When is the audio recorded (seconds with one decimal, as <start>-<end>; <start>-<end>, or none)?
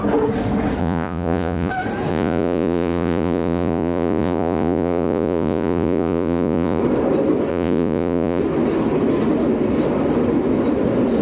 0.0-0.8; 1.7-2.1; 6.8-7.5; 8.4-11.2